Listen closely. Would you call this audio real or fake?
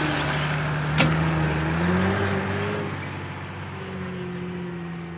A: real